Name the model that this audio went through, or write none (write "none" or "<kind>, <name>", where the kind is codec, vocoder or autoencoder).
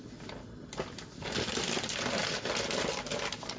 none